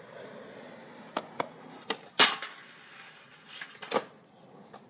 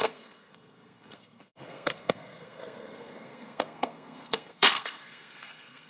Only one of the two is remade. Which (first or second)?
second